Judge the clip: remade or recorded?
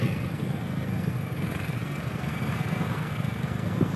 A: remade